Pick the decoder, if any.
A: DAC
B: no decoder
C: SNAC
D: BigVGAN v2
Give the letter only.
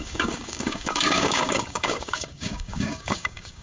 A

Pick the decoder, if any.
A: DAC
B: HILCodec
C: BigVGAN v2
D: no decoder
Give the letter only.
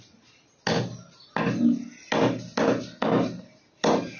D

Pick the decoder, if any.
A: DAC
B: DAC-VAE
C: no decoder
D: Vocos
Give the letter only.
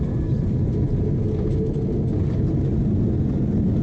C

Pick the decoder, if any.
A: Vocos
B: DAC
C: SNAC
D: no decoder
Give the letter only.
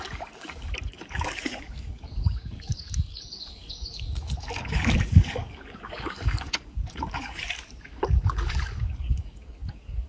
B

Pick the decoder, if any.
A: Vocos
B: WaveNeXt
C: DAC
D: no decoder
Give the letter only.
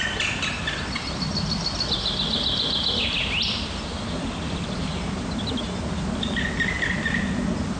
D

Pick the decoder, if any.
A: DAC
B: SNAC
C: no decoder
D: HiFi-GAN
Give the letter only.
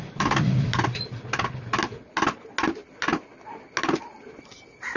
C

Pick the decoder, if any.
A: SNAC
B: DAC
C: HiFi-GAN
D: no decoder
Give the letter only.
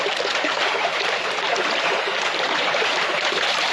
D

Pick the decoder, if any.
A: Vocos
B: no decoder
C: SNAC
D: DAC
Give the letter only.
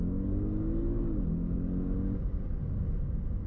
B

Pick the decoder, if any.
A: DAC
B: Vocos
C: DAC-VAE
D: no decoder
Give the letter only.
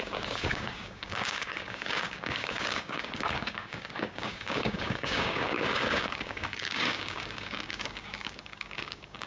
A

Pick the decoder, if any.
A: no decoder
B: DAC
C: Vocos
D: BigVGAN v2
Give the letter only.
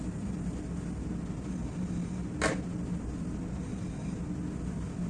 A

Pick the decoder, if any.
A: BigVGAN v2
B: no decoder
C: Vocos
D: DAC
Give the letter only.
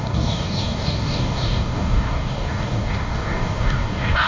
D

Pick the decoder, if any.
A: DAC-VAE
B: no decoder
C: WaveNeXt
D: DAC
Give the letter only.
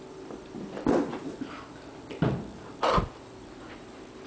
B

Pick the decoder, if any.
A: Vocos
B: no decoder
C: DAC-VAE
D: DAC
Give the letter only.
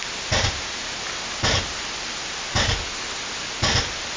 B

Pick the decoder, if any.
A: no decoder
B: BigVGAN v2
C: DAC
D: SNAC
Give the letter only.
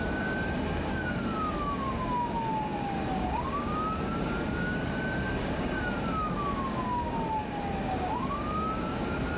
C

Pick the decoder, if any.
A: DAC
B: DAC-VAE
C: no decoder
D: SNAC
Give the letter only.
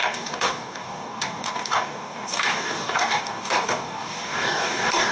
A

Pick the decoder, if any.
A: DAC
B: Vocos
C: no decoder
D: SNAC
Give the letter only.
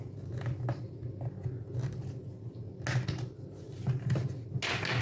C